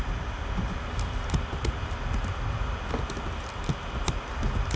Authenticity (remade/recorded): recorded